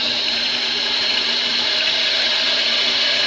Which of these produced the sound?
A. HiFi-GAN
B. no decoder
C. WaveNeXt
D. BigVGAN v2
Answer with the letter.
D